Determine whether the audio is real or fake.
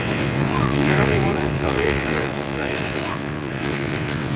fake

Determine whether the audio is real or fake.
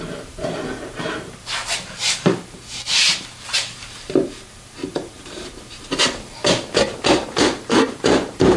fake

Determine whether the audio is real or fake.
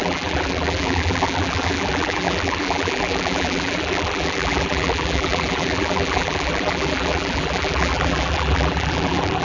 fake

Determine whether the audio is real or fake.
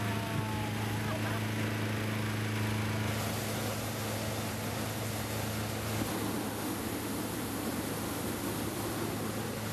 real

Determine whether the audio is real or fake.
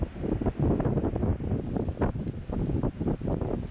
real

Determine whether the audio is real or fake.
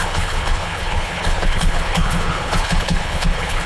fake